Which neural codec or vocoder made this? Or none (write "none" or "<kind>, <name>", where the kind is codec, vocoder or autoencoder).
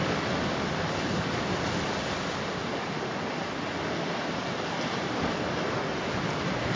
none